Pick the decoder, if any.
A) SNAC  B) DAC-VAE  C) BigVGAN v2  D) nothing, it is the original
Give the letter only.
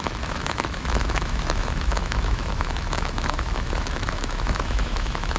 B